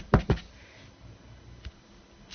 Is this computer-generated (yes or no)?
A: no